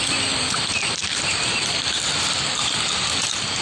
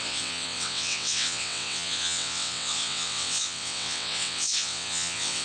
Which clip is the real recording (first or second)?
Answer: first